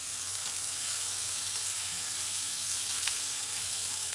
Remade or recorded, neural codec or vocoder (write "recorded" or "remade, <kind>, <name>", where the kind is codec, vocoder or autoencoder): remade, codec, SNAC